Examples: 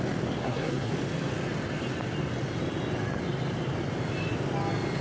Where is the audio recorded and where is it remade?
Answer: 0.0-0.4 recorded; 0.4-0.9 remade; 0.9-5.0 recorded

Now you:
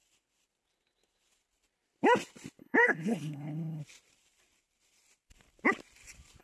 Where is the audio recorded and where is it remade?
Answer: 0.0-2.6 recorded; 2.6-3.8 remade; 3.8-6.4 recorded

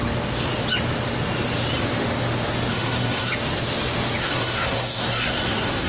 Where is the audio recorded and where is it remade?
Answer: 0.0-2.7 recorded; 2.7-3.3 remade; 3.3-4.2 recorded; 4.2-5.9 remade

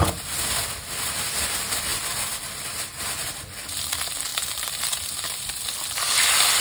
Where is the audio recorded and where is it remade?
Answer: 0.0-4.3 recorded; 4.3-5.5 remade; 5.5-6.6 recorded

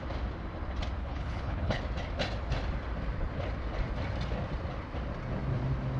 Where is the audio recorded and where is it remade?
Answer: 0.0-1.0 recorded; 1.0-1.8 remade; 1.8-6.0 recorded

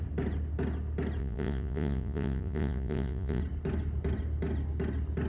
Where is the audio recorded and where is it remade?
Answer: 0.0-1.2 recorded; 1.2-3.4 remade; 3.4-5.3 recorded

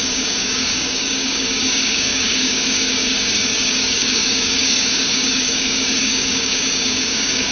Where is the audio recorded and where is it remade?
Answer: 0.0-7.5 remade